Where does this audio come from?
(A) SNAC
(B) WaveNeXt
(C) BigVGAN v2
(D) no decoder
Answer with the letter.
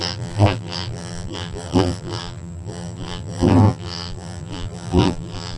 C